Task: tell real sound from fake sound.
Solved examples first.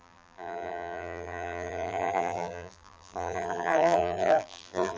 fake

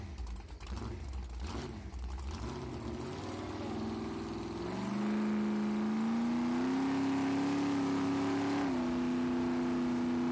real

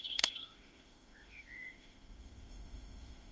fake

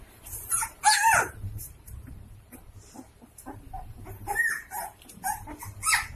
fake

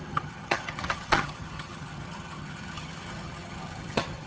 fake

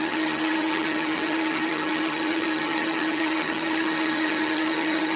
fake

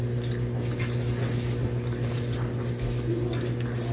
real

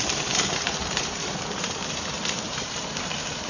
fake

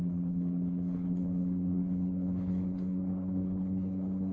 fake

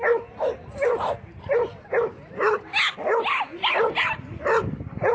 real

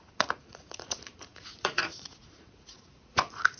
fake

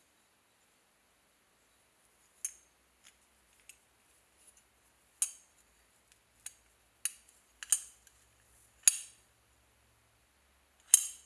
real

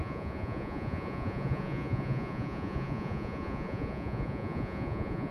fake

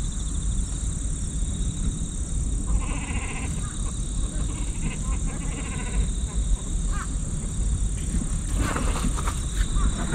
real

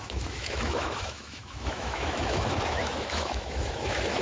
fake